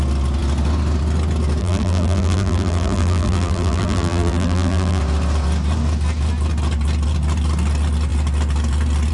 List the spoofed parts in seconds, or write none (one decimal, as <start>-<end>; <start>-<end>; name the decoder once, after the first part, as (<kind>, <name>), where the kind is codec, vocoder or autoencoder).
1.6-5.0 (vocoder, BigVGAN v2)